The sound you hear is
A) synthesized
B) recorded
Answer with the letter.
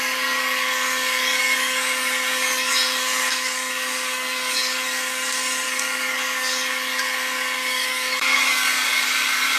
A